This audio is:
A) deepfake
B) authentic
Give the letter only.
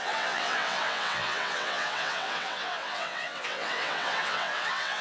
A